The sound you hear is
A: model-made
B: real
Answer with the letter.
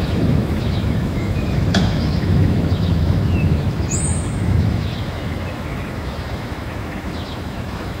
A